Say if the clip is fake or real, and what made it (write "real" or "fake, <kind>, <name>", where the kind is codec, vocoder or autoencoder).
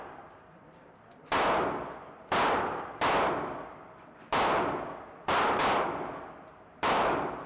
fake, vocoder, BigVGAN v2